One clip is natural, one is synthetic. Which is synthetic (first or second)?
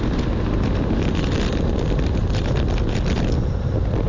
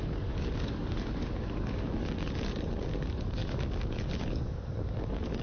second